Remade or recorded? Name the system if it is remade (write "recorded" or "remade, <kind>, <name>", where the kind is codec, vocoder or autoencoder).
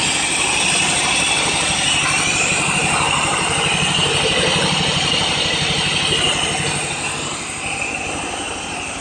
recorded